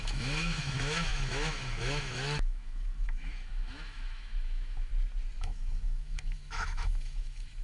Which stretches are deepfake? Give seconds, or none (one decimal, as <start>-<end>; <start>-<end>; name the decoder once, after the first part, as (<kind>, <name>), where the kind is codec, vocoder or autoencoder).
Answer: 0.0-4.9 (autoencoder, DAC-VAE); 5.4-7.6